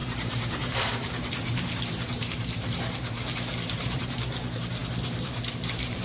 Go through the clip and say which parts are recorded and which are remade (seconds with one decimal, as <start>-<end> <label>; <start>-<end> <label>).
0.0-6.0 remade